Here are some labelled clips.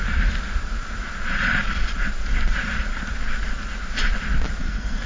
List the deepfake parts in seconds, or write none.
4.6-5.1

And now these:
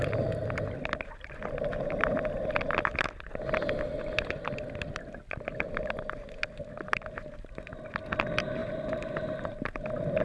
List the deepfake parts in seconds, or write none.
none

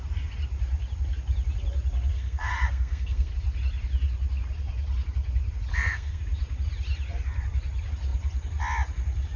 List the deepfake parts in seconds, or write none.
2.1-3.3; 5.7-6.2

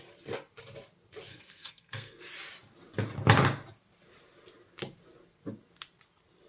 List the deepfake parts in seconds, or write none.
1.3-2.2

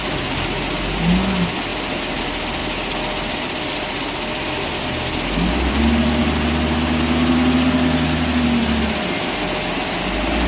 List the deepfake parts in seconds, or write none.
none

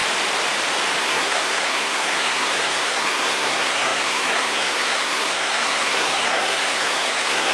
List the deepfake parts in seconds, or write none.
1.0-7.5